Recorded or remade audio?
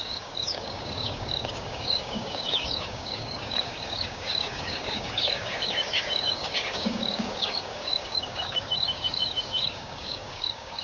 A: remade